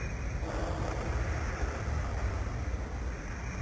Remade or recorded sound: recorded